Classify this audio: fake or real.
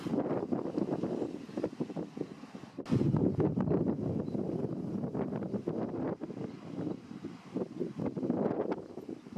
real